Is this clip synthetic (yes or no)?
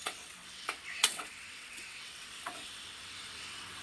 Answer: yes